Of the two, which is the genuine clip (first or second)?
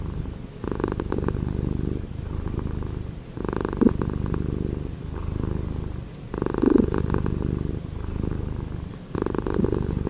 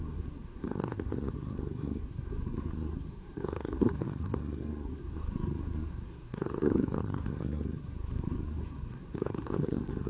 first